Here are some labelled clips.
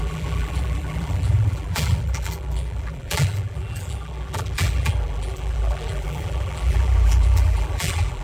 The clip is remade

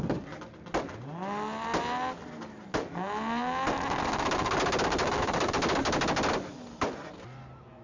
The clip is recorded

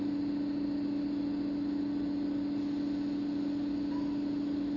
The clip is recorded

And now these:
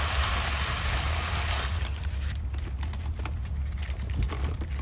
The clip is recorded